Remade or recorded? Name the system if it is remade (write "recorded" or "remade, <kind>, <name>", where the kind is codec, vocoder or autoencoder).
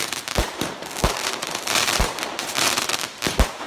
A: remade, vocoder, BigVGAN v2